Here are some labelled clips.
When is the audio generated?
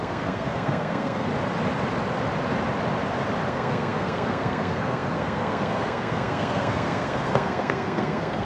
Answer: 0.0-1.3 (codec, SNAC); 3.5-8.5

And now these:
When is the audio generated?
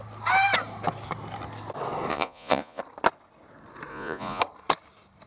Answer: 2.1-2.8 (vocoder, Vocos); 3.9-4.4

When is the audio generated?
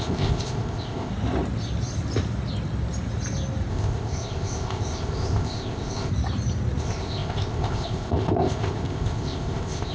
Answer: 0.0-1.1 (codec, ZipCodec); 3.7-6.1; 6.8-9.9